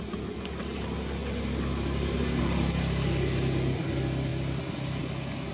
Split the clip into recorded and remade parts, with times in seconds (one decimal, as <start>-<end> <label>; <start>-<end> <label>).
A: 0.0-5.5 recorded